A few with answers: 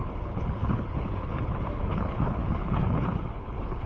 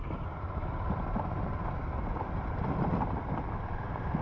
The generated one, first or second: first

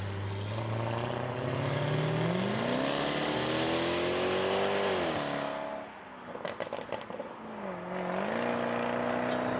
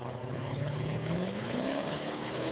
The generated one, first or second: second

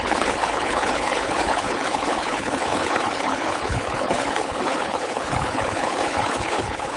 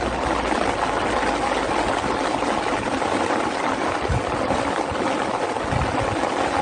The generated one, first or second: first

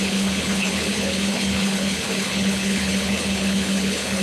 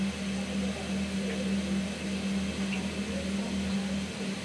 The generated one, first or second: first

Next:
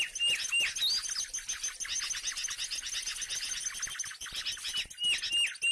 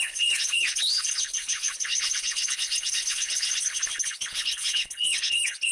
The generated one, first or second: second